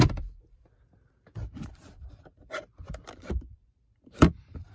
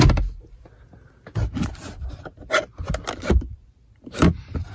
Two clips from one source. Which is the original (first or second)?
second